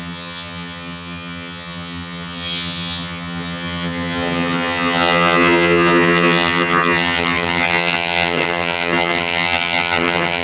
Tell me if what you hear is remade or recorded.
remade